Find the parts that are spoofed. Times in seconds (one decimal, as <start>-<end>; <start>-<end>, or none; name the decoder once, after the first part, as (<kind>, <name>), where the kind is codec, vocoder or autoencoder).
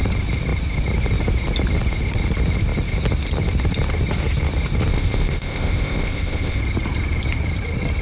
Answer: 4.9-6.6 (codec, ZipCodec)